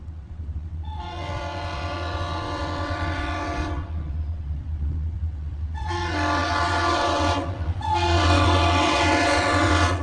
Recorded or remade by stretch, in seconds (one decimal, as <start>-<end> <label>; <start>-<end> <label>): 0.0-10.0 remade